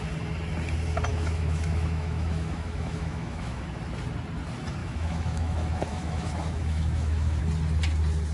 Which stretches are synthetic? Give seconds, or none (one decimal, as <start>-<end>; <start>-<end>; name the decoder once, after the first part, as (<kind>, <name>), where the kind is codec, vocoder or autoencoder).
1.1-3.8 (autoencoder, DAC-VAE); 4.8-7.4